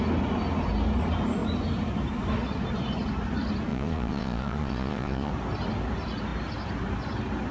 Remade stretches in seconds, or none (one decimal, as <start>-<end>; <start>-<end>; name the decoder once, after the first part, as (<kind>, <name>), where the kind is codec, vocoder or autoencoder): 3.7-5.3 (vocoder, Vocos)